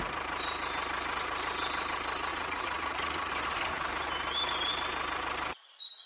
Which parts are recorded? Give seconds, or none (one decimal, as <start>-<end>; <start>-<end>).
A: 0.0-2.3; 3.3-6.1